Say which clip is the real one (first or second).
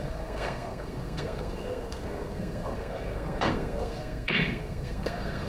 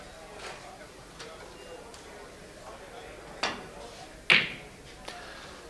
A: second